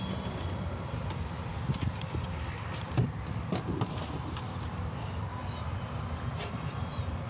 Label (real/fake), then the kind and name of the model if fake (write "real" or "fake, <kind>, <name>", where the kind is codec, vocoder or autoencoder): fake, vocoder, BigVGAN v2